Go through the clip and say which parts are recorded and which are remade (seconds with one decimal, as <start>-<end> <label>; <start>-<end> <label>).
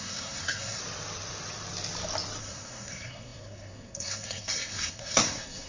0.0-0.8 remade; 0.8-2.4 recorded; 2.4-5.7 remade